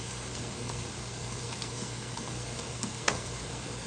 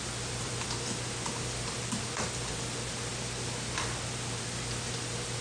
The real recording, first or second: second